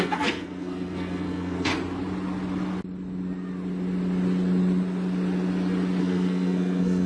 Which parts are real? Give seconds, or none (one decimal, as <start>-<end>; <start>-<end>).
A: 1.7-6.0